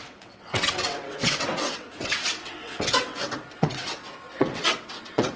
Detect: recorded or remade remade